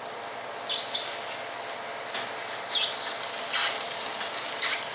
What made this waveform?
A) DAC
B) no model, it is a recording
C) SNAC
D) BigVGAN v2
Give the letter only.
B